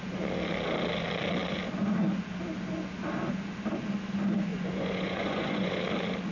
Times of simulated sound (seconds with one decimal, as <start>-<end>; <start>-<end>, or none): 4.5-5.8